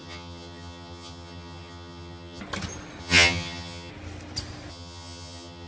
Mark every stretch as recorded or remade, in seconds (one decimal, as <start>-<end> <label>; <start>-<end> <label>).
0.0-2.4 remade; 2.4-3.0 recorded; 3.0-3.9 remade; 3.9-4.7 recorded; 4.7-5.7 remade

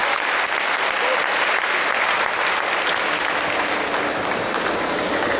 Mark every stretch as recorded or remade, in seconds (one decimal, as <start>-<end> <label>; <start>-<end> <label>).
0.0-5.4 recorded

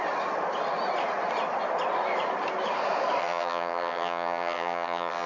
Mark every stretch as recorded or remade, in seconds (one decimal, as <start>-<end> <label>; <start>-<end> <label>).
0.0-3.2 recorded; 3.2-5.3 remade

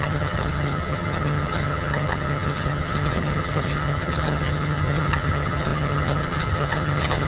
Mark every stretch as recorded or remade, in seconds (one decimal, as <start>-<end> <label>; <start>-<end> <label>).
0.0-7.3 remade